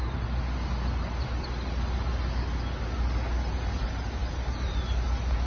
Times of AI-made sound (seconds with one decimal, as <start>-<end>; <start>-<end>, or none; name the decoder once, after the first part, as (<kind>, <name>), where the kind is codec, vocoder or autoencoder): none